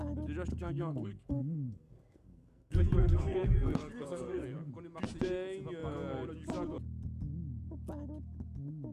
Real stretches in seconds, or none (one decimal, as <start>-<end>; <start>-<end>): 0.0-0.5; 4.7-8.9